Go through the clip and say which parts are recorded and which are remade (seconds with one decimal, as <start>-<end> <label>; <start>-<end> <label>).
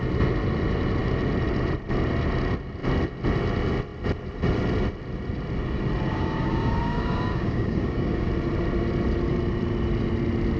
0.0-6.1 recorded; 6.1-8.3 remade; 8.3-10.6 recorded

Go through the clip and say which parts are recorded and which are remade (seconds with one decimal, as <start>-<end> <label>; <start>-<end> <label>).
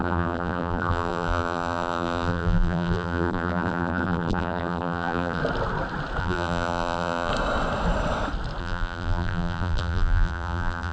0.0-5.4 remade; 5.4-6.2 recorded; 6.2-7.3 remade; 7.3-8.6 recorded; 8.6-10.9 remade